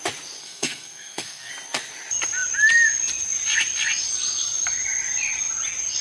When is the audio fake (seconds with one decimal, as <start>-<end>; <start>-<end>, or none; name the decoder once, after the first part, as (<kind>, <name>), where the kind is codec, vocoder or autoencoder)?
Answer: 0.4-1.5 (codec, SNAC)